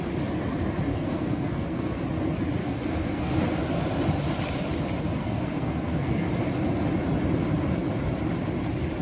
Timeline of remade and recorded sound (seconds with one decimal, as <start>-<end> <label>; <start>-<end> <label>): 0.0-0.9 recorded; 0.9-2.0 remade; 2.0-2.6 recorded; 2.6-3.4 remade; 3.4-5.2 recorded; 5.2-6.3 remade; 6.3-9.0 recorded